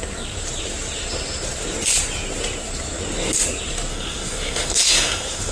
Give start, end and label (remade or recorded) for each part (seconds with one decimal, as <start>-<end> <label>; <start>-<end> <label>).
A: 0.0-3.9 recorded; 3.9-5.5 remade